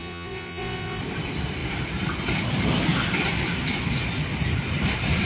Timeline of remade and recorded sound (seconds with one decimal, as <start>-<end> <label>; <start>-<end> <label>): 0.0-1.0 remade; 1.0-5.3 recorded